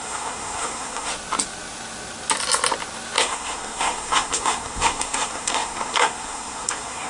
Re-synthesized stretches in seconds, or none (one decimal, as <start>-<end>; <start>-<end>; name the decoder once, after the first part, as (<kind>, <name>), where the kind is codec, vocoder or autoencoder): 0.0-1.1 (codec, SNAC); 3.2-7.1